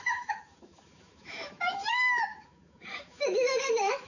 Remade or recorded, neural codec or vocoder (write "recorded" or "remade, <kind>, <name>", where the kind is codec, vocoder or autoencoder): remade, autoencoder, DAC-VAE